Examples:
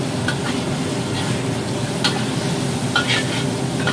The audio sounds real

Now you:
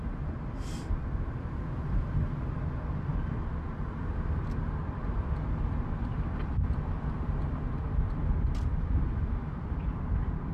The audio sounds real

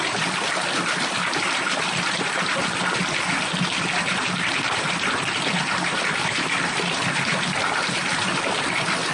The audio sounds real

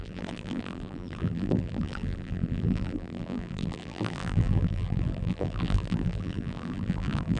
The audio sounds fake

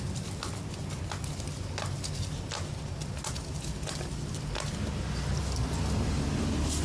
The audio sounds real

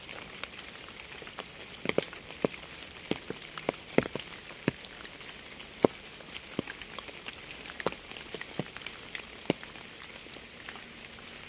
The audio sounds real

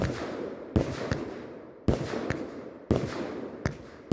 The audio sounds real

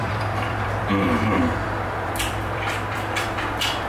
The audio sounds fake